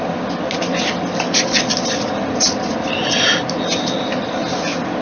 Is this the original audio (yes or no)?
yes